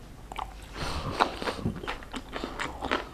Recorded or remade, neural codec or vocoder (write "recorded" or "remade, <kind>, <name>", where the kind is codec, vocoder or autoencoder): recorded